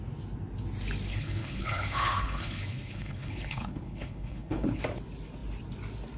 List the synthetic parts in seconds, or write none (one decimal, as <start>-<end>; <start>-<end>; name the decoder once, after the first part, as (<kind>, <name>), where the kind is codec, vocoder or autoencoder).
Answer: 1.1-4.8 (codec, HILCodec)